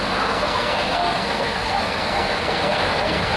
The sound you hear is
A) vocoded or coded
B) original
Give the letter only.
A